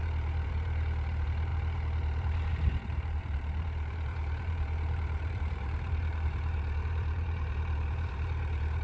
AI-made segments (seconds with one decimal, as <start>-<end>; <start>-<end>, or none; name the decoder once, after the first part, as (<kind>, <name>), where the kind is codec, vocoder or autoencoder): 0.0-8.8 (vocoder, BigVGAN v2)